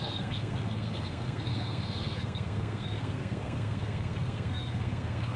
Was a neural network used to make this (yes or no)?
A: yes